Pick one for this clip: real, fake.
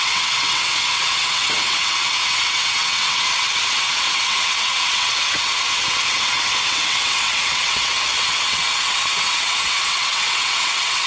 fake